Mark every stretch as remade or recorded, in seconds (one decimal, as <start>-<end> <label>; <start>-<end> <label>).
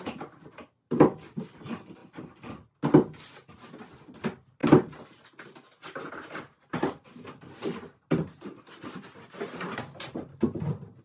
0.0-11.0 recorded